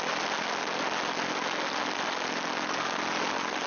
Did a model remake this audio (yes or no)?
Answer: no